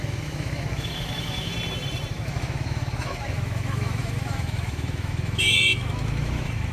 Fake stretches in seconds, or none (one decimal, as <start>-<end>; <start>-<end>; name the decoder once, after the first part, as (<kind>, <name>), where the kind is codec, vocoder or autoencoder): 0.0-1.5 (autoencoder, DAC-VAE); 2.1-6.7